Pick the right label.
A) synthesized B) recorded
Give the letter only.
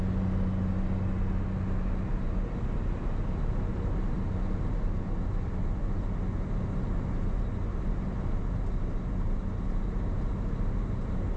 B